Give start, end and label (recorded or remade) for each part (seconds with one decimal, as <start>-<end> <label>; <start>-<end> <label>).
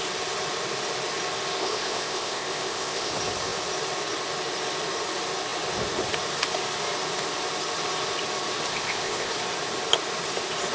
0.0-1.6 recorded; 1.6-3.1 remade; 3.1-8.7 recorded; 8.7-9.3 remade; 9.3-10.7 recorded